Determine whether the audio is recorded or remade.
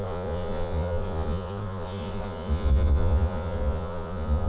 remade